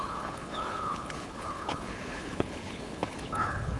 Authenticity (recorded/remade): remade